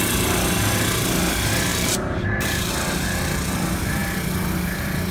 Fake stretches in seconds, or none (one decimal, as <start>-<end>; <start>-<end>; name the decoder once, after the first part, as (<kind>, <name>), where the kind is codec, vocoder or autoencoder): 1.7-2.7 (vocoder, BigVGAN v2)